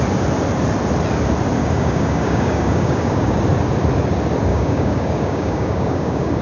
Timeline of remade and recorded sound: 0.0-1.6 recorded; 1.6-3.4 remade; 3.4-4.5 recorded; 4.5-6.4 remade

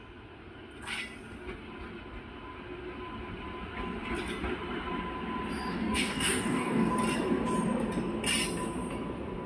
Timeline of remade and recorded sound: 0.0-5.7 recorded; 5.7-6.9 remade; 6.9-9.5 recorded

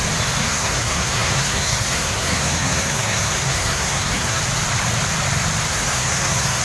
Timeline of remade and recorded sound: 0.0-0.4 recorded; 0.4-4.4 remade; 4.4-5.7 recorded; 5.7-6.6 remade

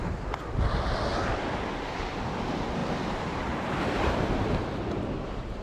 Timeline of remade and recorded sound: 0.0-2.8 recorded; 2.8-4.6 remade; 4.6-5.6 recorded

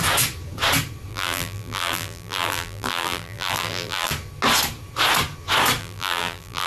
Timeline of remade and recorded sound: 0.0-1.1 recorded; 1.1-4.1 remade; 4.1-5.8 recorded; 5.8-6.7 remade

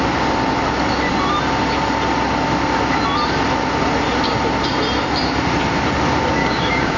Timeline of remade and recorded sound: 0.0-6.4 recorded; 6.4-7.0 remade

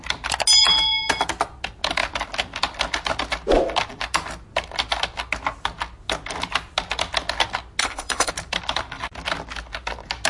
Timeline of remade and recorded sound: 0.0-7.8 recorded; 7.8-8.3 remade; 8.3-10.3 recorded